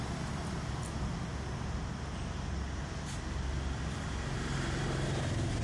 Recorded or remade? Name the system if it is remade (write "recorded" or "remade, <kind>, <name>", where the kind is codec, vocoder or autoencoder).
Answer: recorded